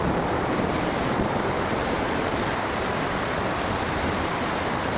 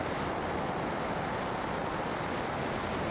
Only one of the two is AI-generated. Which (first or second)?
first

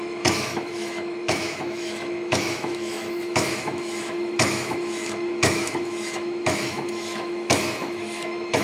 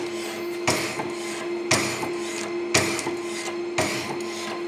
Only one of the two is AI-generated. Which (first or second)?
first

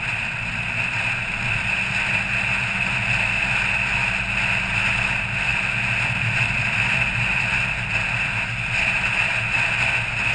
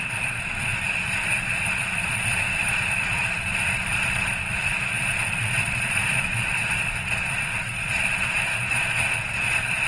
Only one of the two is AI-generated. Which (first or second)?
second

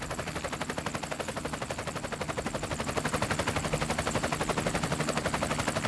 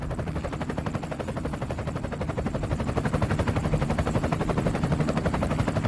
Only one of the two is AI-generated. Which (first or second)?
second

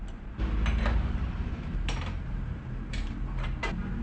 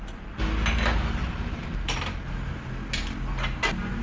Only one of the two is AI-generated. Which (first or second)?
first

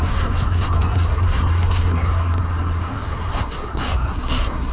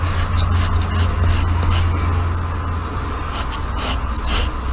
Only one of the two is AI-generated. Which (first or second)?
first